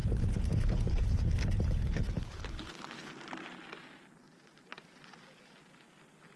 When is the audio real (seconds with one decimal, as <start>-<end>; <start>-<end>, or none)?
3.1-6.4